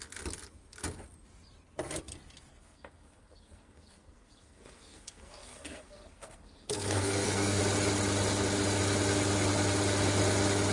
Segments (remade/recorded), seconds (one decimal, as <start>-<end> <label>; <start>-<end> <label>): 0.0-2.5 recorded; 2.5-7.6 remade; 7.6-10.7 recorded